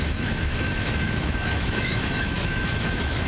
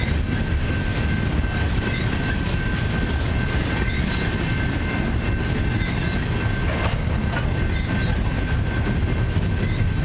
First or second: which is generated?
first